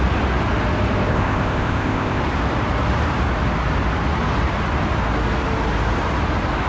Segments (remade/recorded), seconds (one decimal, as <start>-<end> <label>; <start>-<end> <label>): 0.0-1.1 recorded; 1.1-2.2 remade; 2.2-6.7 recorded